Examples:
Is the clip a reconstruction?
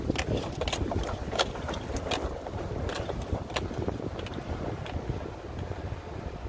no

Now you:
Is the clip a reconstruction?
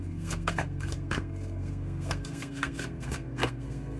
yes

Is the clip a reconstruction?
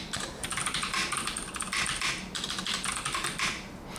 no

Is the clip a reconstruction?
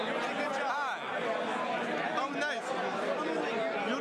no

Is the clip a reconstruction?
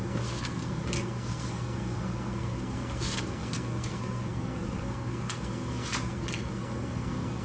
yes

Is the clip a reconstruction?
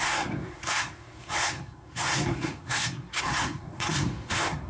yes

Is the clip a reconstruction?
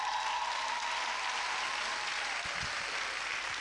no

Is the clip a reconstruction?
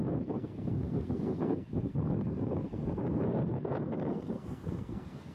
yes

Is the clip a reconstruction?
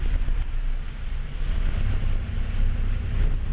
no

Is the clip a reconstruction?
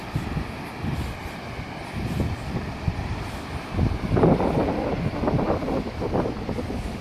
no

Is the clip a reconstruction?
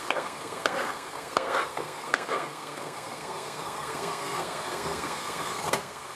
yes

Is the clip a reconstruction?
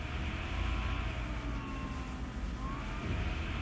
no